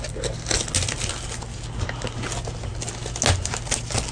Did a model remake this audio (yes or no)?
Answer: no